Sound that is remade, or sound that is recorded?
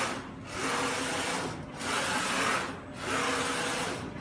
recorded